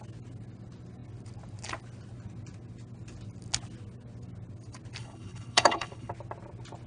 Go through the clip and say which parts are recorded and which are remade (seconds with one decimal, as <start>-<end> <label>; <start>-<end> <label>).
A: 0.0-5.0 recorded; 5.0-6.1 remade; 6.1-6.9 recorded